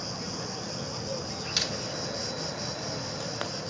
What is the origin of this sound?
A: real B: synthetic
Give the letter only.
A